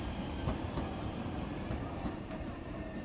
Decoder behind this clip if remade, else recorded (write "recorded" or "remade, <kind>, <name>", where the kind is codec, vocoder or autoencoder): remade, vocoder, BigVGAN v2